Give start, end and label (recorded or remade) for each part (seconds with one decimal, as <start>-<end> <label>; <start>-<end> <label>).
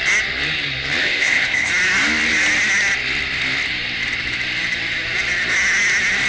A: 0.0-1.0 recorded; 1.0-1.7 remade; 1.7-6.3 recorded